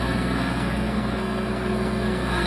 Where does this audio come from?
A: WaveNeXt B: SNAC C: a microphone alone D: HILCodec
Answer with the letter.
B